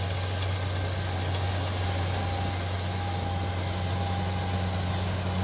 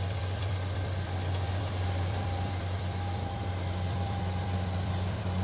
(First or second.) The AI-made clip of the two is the second